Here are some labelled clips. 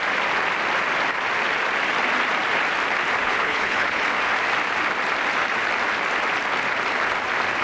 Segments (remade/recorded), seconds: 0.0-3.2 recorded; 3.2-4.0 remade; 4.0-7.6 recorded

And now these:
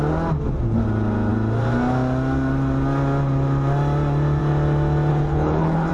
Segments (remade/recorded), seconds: 0.0-5.1 recorded; 5.1-5.9 remade